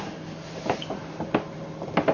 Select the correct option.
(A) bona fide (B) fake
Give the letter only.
A